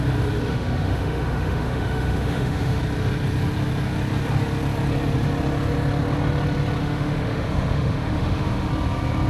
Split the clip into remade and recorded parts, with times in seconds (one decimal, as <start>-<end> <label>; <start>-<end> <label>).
0.0-0.5 recorded; 0.5-2.8 remade; 2.8-6.8 recorded; 6.8-8.7 remade; 8.7-9.3 recorded